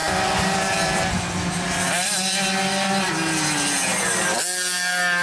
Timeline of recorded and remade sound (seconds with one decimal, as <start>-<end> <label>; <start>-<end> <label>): 0.0-3.1 remade; 3.1-3.9 recorded; 3.9-4.4 remade; 4.4-5.2 recorded

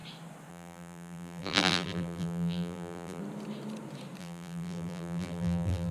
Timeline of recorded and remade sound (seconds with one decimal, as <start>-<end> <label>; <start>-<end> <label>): 0.0-0.5 recorded; 0.5-3.2 remade; 3.2-4.2 recorded; 4.2-5.9 remade

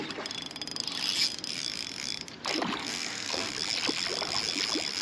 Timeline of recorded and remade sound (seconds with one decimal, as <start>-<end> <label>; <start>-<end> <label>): 0.0-2.8 recorded; 2.8-3.5 remade; 3.5-5.0 recorded